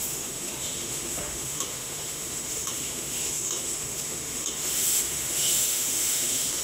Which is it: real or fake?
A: fake